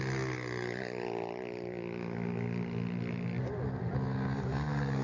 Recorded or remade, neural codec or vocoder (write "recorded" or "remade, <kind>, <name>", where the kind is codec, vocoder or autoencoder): recorded